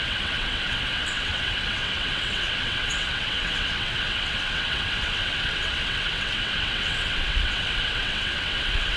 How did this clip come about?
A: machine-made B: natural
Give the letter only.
A